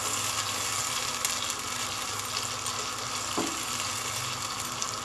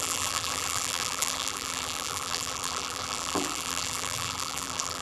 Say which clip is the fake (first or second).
second